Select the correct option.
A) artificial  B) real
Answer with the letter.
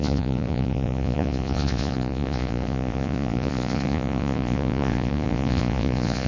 A